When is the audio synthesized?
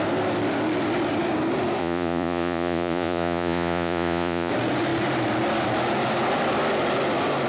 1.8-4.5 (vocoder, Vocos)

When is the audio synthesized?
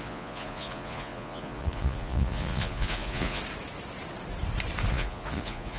0.0-3.4 (vocoder, Vocos); 4.9-5.8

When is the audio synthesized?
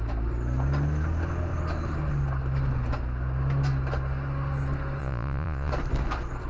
5.0-5.7 (vocoder, Vocos)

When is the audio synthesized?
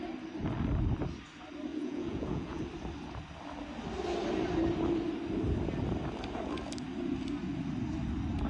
1.7-2.6 (vocoder, Vocos)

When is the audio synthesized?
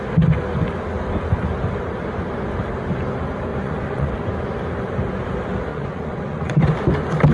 3.5-4.1 (vocoder, Vocos); 5.7-6.6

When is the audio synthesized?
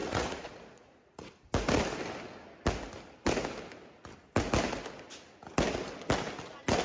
0.0-1.3 (vocoder, Vocos)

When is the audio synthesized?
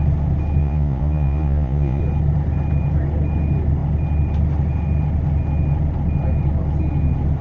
0.6-2.0 (vocoder, Vocos)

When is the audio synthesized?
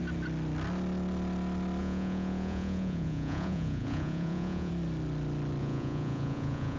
1.8-4.7 (vocoder, Vocos); 5.6-6.8